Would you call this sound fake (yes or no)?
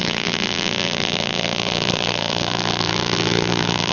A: yes